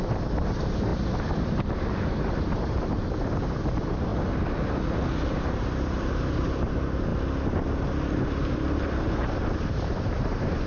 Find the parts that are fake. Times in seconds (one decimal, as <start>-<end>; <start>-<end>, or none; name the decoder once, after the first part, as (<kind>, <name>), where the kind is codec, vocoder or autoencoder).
0.0-0.9 (vocoder, BigVGAN v2); 2.2-4.1; 5.3-7.1; 9.7-10.7